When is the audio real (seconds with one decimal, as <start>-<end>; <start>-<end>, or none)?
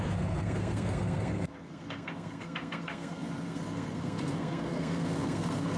none